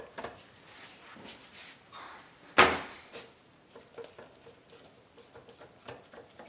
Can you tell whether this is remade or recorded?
recorded